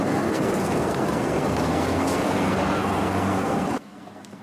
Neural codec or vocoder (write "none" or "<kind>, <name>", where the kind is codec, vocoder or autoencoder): codec, SNAC